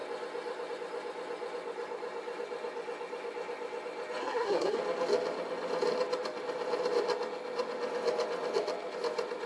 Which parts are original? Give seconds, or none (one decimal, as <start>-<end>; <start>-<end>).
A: 0.0-4.2; 4.8-9.5